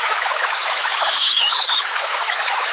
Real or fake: fake